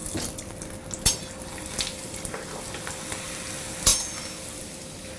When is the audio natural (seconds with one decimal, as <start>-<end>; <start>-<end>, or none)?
0.0-5.2